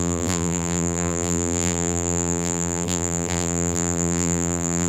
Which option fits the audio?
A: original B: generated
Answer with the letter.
B